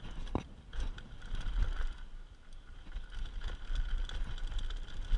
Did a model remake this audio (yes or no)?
no